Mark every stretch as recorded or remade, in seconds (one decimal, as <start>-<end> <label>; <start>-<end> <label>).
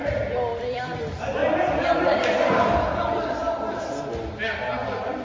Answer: 0.0-5.2 recorded